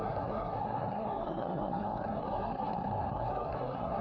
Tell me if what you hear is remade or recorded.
remade